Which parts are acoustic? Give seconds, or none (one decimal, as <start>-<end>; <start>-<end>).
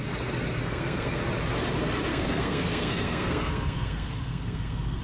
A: 0.0-0.6; 1.2-2.1